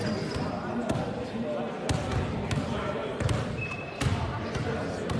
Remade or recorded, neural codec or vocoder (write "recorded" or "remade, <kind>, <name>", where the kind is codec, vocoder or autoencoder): recorded